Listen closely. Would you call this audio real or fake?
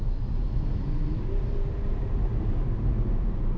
real